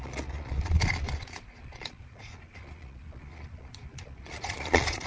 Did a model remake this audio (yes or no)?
yes